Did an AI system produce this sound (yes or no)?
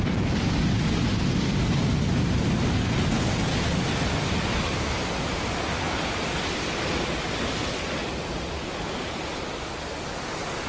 no